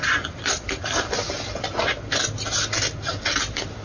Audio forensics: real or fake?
real